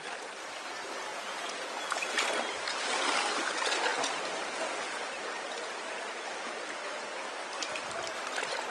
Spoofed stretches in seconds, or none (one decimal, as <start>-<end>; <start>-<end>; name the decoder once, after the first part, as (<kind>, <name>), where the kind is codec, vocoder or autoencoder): 1.1-2.1 (vocoder, Vocos)